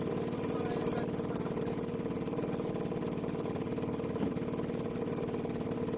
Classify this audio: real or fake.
real